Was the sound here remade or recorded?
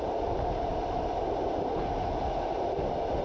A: recorded